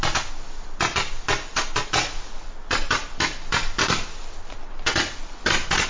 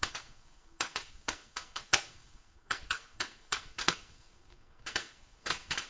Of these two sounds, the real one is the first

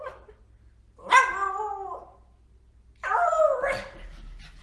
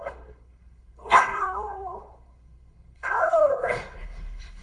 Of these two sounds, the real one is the first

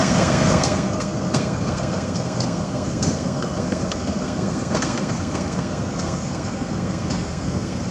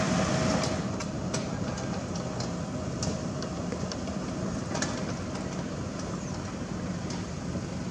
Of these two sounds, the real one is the second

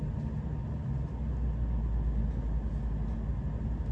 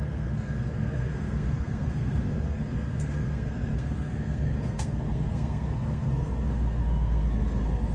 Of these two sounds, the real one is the first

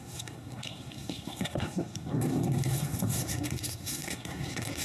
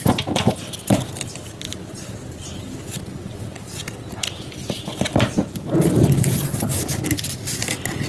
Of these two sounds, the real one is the second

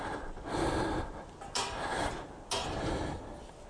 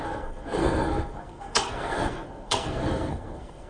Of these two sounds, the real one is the first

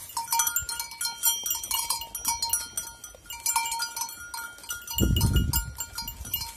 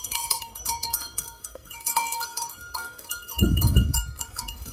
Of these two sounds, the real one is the first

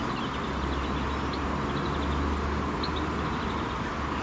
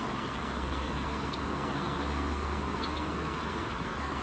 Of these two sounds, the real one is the first